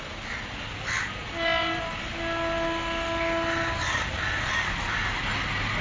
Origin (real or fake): real